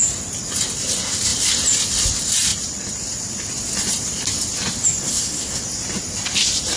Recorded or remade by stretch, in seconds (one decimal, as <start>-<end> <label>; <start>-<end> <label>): 0.0-5.1 recorded; 5.1-5.6 remade; 5.6-6.8 recorded